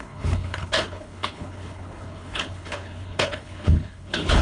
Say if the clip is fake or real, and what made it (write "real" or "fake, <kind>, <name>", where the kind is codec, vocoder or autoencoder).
fake, codec, HILCodec